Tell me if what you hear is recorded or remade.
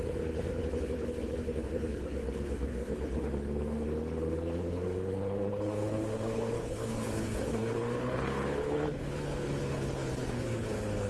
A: remade